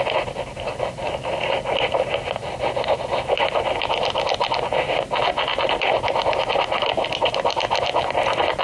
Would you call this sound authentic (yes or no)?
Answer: yes